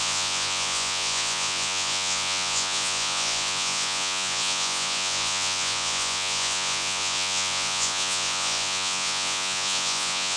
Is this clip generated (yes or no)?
yes